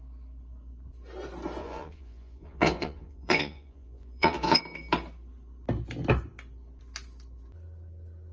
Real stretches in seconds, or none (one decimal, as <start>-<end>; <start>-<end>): 0.0-1.6; 4.6-8.3